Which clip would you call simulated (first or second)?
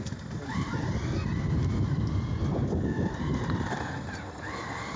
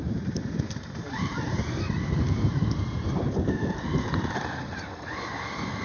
second